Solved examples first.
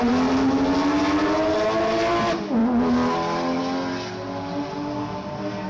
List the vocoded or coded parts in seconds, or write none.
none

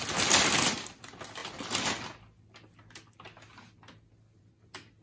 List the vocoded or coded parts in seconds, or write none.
none

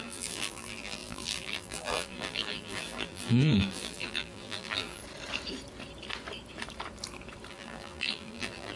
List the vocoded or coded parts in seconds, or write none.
0.0-5.0 (vocoder, BigVGAN v2); 7.5-8.8

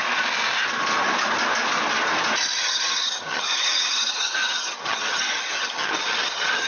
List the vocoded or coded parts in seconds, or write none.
2.6-6.7 (vocoder, HiFi-GAN)